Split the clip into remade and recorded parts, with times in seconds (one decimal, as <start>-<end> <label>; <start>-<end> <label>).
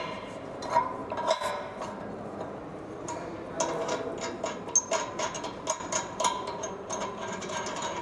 0.0-1.0 remade; 1.0-5.7 recorded; 5.7-8.0 remade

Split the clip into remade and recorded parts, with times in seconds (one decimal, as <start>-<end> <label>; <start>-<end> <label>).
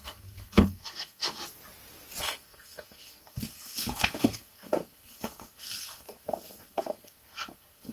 0.0-1.4 remade; 1.4-2.2 recorded; 2.2-7.9 remade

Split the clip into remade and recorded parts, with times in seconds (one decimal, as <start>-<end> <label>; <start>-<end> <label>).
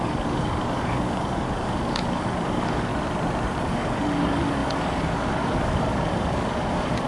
0.0-2.9 remade; 2.9-3.6 recorded; 3.6-7.1 remade